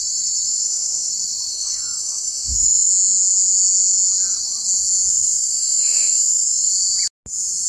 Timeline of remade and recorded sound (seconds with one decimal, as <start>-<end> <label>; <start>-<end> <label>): 0.0-0.5 recorded; 0.5-1.1 remade; 1.1-1.5 recorded; 1.5-2.9 remade; 2.9-5.1 recorded; 5.1-6.7 remade; 6.7-7.7 recorded